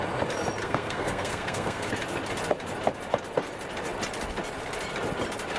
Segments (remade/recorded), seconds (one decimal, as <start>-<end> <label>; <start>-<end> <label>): 0.0-0.6 recorded; 0.6-1.9 remade; 1.9-5.6 recorded